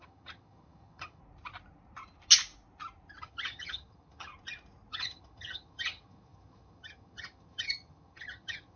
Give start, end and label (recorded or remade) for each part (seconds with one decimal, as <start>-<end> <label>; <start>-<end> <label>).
0.0-1.2 remade; 1.2-3.2 recorded; 3.2-4.3 remade; 4.3-4.9 recorded; 4.9-8.8 remade